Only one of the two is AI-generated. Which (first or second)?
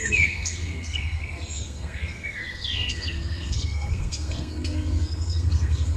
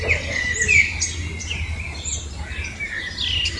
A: first